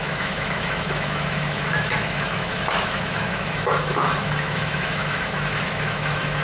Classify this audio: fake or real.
fake